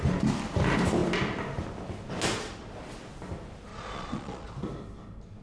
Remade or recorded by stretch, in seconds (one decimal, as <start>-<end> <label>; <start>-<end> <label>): 0.0-3.7 recorded; 3.7-4.5 remade; 4.5-5.4 recorded